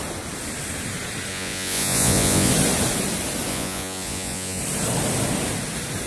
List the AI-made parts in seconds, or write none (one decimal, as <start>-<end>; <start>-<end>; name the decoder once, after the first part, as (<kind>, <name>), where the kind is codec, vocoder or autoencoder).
1.3-2.5 (vocoder, Vocos); 3.5-4.6

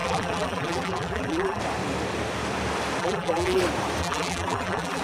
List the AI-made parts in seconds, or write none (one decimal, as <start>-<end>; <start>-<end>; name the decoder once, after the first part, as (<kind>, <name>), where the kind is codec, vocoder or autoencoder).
0.0-1.6 (vocoder, BigVGAN v2); 3.0-3.6; 4.0-5.0

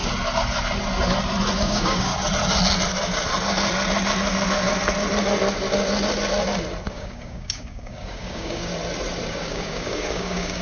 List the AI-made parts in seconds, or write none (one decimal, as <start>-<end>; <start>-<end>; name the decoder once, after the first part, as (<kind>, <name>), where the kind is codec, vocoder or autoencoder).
1.6-2.1 (codec, DAC); 6.9-8.7; 9.3-10.6

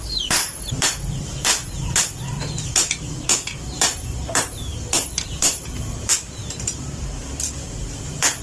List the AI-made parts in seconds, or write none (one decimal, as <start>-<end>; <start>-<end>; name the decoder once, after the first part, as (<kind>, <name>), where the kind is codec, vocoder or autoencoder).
0.0-1.5 (vocoder, BigVGAN v2); 3.7-6.4; 7.7-8.4

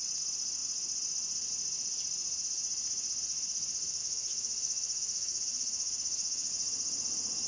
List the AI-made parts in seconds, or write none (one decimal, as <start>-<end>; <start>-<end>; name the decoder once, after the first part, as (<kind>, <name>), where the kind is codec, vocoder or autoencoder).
4.0-6.5 (autoencoder, DAC-VAE)

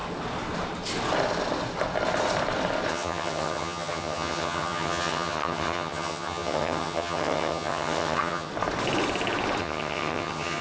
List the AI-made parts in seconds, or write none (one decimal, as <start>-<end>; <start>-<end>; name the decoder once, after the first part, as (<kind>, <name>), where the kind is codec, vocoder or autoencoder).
2.9-8.5 (vocoder, HiFi-GAN); 9.6-10.6